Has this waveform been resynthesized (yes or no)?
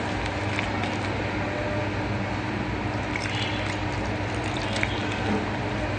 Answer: no